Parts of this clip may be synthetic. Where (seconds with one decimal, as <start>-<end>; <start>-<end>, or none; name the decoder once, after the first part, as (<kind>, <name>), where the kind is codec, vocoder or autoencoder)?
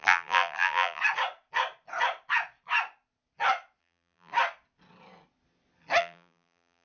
0.0-1.0 (vocoder, BigVGAN v2); 3.8-4.3; 6.0-6.8